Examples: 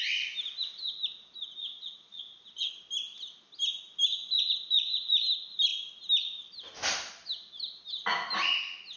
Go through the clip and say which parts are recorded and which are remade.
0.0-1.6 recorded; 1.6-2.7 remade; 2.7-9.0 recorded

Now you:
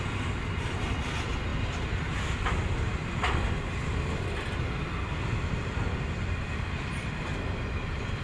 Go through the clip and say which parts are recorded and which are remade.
0.0-8.2 recorded

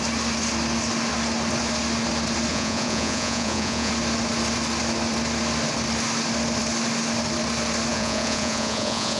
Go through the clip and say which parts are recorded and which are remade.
0.0-2.5 recorded; 2.5-3.9 remade; 3.9-7.9 recorded; 7.9-9.2 remade

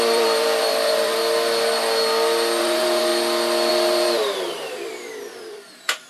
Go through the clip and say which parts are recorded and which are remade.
0.0-1.2 remade; 1.2-2.6 recorded; 2.6-3.1 remade; 3.1-3.7 recorded; 3.7-6.1 remade

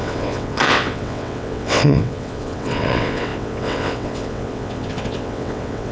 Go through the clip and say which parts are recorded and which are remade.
0.0-5.9 remade